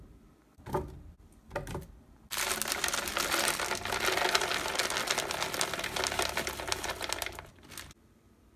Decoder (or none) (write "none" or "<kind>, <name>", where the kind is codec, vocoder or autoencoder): none